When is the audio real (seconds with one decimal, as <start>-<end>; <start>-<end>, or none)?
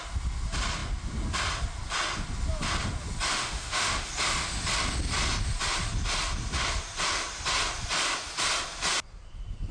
0.0-3.3; 4.1-9.7